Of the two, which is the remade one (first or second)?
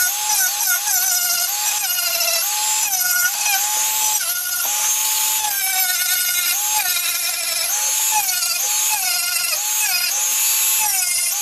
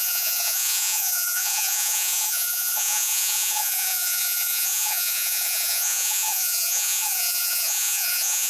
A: second